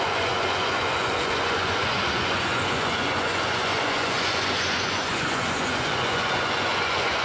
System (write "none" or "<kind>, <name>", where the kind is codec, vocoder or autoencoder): vocoder, Vocos